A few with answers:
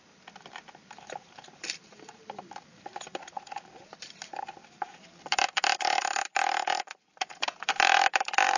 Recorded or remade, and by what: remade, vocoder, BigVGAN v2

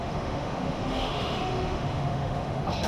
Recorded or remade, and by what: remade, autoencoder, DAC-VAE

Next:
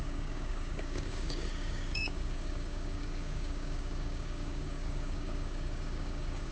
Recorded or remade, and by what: remade, codec, DAC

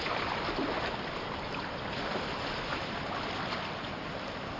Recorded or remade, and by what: recorded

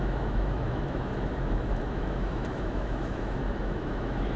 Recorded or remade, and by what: remade, autoencoder, DAC-VAE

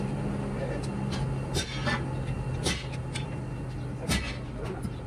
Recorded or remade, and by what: recorded